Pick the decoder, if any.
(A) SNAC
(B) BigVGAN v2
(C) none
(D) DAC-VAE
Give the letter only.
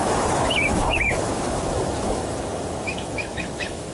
D